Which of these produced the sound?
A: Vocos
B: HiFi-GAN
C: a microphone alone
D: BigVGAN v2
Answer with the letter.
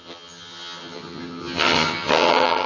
B